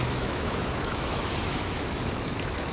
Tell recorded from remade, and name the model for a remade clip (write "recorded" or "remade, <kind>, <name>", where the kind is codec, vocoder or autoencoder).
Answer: remade, autoencoder, DAC-VAE